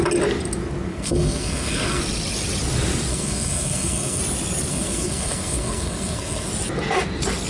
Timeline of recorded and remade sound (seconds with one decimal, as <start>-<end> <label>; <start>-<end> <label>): 0.0-0.9 recorded; 0.9-2.0 remade; 2.0-3.1 recorded; 3.1-4.2 remade; 4.2-4.7 recorded; 4.7-6.5 remade; 6.5-7.5 recorded